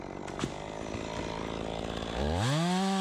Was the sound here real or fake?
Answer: real